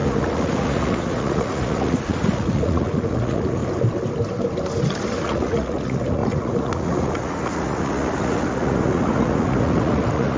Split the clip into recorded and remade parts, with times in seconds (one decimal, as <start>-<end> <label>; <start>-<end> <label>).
0.0-3.6 remade; 3.6-5.2 recorded; 5.2-10.4 remade